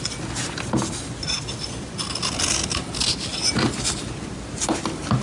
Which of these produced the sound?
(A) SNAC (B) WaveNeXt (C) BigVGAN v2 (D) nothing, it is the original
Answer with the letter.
D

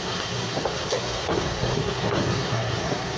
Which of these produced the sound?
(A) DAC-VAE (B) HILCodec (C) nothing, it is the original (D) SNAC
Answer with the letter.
D